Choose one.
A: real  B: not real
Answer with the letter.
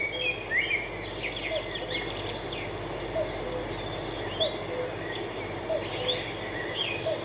A